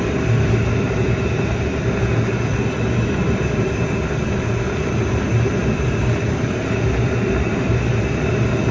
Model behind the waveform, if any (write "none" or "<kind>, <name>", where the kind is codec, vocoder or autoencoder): none